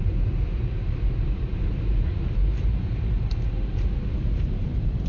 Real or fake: fake